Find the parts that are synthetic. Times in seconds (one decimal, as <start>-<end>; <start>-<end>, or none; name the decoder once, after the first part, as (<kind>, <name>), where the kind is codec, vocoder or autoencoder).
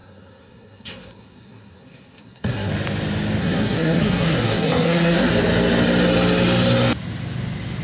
0.0-2.7 (codec, SNAC); 3.4-5.3